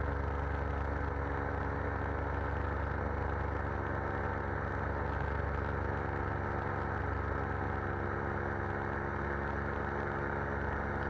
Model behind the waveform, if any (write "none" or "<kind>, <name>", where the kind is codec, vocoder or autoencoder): none